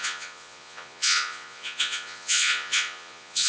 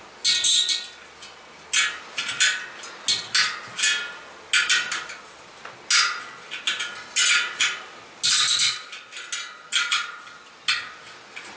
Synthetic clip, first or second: first